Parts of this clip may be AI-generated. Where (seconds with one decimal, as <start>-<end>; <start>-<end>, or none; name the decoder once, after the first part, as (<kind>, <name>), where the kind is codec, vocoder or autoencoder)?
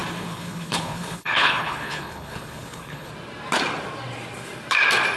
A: 0.0-3.1 (codec, HILCodec)